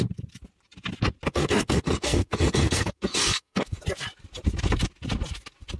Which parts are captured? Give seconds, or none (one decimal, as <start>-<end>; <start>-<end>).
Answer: 0.0-1.3; 3.8-5.8